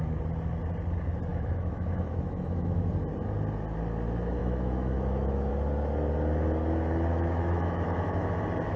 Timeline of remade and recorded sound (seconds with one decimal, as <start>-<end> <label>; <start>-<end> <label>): 0.0-1.3 recorded; 1.3-2.9 remade; 2.9-4.4 recorded; 4.4-5.5 remade; 5.5-7.1 recorded; 7.1-8.3 remade; 8.3-8.8 recorded